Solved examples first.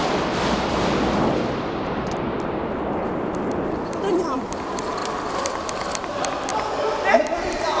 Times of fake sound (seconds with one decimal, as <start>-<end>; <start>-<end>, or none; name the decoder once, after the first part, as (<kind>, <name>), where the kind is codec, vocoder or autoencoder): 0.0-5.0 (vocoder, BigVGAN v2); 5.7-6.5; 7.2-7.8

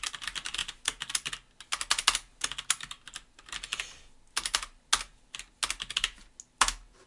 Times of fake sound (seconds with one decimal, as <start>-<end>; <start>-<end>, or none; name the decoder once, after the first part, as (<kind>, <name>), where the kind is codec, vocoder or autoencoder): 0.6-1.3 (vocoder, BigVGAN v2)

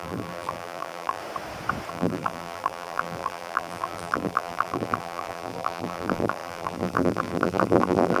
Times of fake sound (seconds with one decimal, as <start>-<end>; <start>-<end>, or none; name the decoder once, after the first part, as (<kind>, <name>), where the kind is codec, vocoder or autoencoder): 0.0-1.2 (vocoder, BigVGAN v2); 1.9-8.2